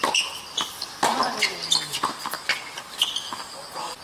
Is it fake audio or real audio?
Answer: real